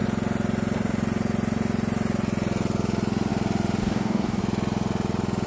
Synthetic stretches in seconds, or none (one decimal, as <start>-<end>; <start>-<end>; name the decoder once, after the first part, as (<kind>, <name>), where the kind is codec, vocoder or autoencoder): 3.8-4.4 (codec, DAC)